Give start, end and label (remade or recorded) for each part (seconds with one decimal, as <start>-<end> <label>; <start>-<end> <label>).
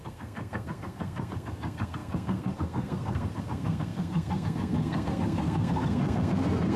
0.0-6.8 remade